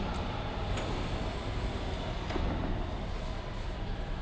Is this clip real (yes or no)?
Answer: yes